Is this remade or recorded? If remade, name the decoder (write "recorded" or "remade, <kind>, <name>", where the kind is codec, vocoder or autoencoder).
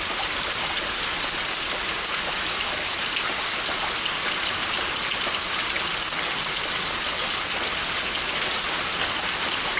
recorded